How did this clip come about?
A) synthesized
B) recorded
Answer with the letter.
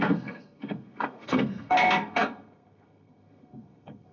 A